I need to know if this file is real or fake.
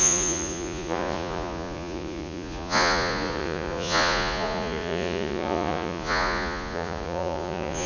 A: fake